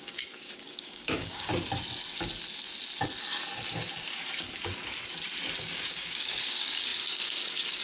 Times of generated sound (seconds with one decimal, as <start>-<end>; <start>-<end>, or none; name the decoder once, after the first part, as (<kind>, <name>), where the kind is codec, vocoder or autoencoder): 0.0-1.5 (codec, DAC); 5.6-7.8